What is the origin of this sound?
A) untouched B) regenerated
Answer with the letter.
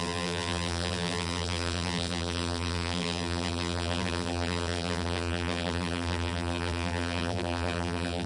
B